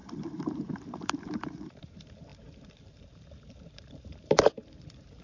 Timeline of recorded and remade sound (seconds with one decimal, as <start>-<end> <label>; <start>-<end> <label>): 0.0-5.2 remade